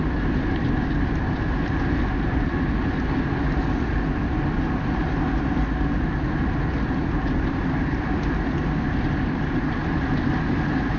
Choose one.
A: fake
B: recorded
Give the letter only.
B